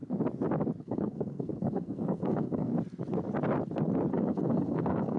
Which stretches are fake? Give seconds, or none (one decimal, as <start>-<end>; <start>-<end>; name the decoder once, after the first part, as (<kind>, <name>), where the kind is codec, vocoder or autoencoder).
0.8-2.7 (codec, SNAC); 4.1-5.2